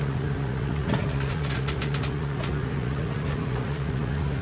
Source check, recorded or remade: remade